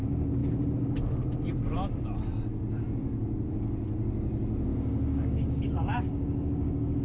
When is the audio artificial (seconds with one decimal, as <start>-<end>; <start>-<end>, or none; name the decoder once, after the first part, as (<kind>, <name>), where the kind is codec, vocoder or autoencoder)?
4.7-7.0 (codec, DAC)